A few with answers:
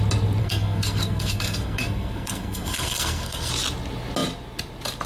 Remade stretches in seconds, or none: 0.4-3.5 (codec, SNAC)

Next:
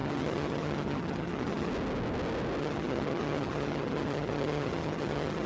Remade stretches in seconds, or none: 0.0-1.7 (vocoder, HiFi-GAN); 2.6-5.5

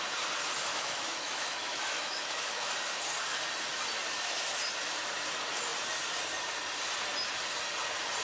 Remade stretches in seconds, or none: 0.7-2.7 (autoencoder, DAC-VAE)

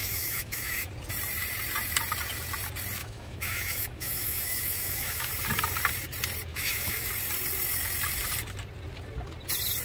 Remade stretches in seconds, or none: 0.0-0.9 (autoencoder, DAC-VAE); 3.0-5.3; 6.5-7.1

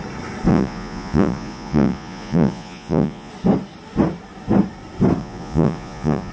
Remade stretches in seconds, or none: 0.5-3.3 (vocoder, Vocos); 5.2-6.3

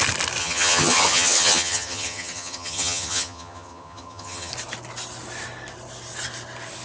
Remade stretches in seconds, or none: 0.4-4.5 (vocoder, HiFi-GAN)

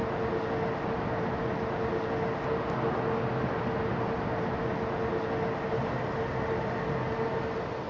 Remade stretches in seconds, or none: none